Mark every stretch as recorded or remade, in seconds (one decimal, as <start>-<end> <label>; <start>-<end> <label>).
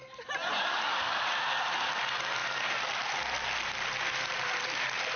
0.0-0.7 recorded; 0.7-1.2 remade; 1.2-5.2 recorded